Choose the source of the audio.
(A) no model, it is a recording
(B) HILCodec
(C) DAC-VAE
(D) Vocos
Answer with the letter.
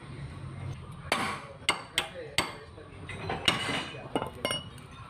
A